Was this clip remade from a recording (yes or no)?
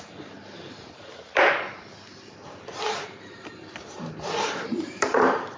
yes